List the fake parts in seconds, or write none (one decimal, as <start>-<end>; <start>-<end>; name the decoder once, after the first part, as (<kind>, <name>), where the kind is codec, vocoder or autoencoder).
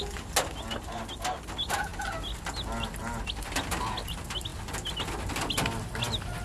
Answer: none